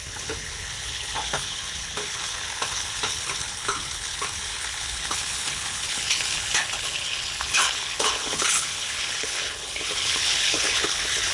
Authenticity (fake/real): fake